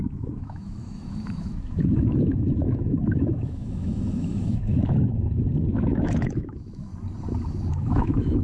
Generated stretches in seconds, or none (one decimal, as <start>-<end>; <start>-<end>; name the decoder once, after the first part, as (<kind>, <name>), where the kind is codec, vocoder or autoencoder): 0.0-6.9 (autoencoder, DAC-VAE); 7.7-8.4

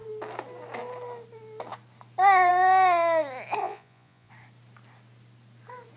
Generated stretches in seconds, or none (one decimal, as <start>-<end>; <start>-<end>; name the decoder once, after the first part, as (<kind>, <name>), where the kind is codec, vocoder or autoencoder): 3.6-4.3 (vocoder, Vocos)